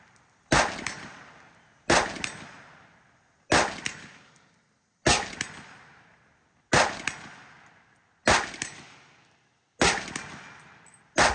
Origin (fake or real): real